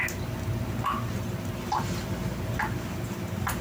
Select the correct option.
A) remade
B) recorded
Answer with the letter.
B